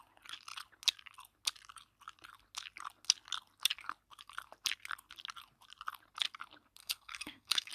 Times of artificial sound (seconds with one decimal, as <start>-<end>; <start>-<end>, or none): 6.8-7.7